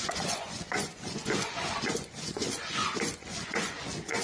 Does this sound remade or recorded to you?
remade